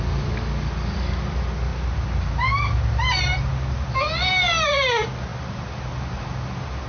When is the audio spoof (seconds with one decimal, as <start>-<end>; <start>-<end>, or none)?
none